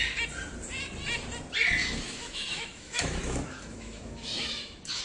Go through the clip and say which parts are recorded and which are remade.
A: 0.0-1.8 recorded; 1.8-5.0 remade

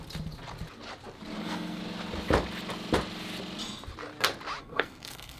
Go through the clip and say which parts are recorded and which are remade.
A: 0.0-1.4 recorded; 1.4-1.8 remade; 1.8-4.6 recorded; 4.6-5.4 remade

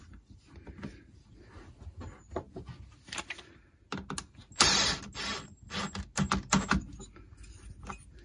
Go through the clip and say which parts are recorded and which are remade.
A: 0.0-8.2 recorded

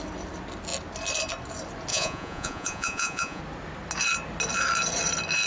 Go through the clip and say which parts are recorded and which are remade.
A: 0.0-1.9 recorded; 1.9-3.4 remade; 3.4-5.5 recorded

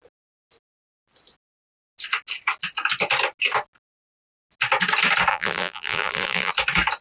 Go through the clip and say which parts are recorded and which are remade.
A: 0.0-5.3 recorded; 5.3-6.5 remade; 6.5-7.0 recorded